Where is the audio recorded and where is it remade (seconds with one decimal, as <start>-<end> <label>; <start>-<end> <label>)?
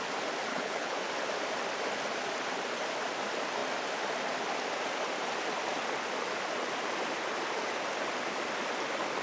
0.0-0.5 recorded; 0.5-1.0 remade; 1.0-9.2 recorded